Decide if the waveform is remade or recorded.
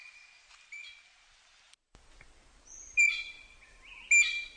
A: recorded